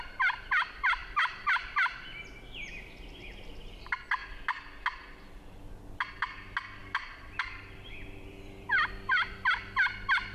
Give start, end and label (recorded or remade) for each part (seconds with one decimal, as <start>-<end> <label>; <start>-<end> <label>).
0.0-6.8 recorded; 6.8-9.5 remade; 9.5-10.3 recorded